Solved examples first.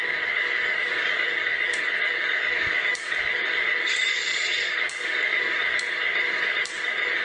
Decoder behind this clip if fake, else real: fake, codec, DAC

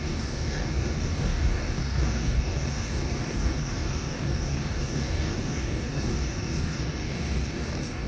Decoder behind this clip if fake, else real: fake, codec, DAC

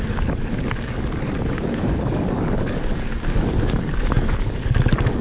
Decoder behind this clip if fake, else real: fake, codec, DAC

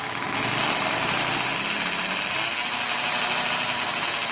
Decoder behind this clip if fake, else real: real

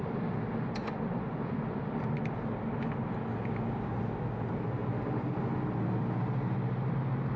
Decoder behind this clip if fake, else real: real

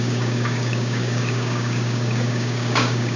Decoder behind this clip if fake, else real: fake, codec, DAC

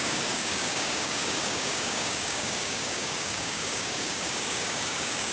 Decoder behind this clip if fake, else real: fake, codec, DAC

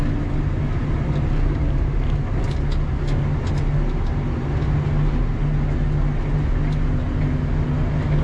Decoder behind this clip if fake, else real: real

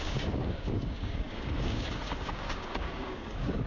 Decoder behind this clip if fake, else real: fake, codec, DAC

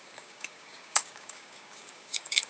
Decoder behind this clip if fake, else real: fake, codec, DAC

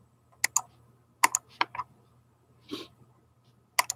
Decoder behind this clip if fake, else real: real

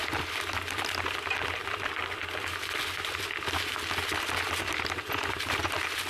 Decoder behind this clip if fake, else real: real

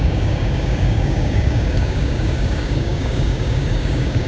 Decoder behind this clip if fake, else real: fake, codec, DAC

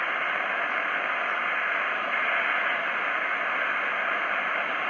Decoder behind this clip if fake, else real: real